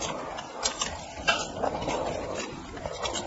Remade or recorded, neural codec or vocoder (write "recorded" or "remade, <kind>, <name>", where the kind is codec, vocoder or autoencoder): recorded